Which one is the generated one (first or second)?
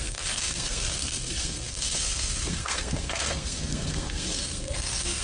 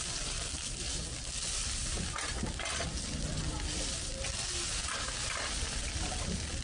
first